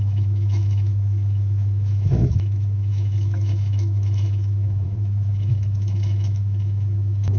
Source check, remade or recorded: remade